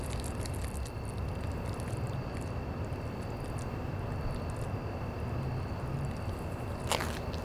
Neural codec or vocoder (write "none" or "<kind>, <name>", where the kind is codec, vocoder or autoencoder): none